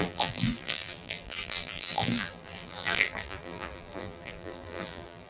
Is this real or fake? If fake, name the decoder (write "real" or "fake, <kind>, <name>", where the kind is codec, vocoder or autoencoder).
fake, vocoder, BigVGAN v2